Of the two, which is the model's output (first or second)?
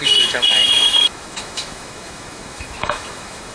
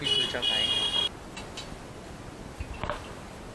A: first